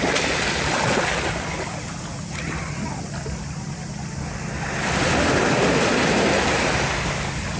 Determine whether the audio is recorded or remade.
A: recorded